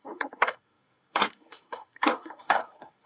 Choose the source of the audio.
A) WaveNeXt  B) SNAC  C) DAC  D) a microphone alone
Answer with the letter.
B